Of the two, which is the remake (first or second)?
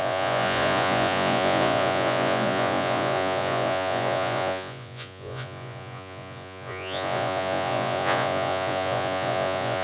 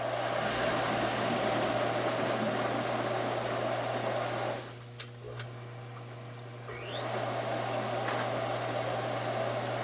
first